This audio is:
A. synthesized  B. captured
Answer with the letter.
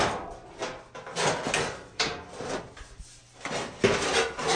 B